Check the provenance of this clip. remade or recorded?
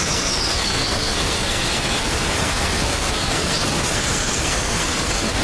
remade